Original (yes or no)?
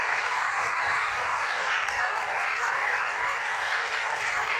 no